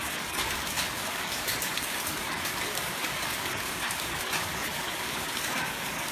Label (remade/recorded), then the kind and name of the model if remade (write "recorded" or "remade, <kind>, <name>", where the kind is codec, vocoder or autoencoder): remade, codec, DAC